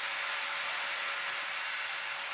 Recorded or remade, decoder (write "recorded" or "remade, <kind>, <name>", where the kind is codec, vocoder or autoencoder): recorded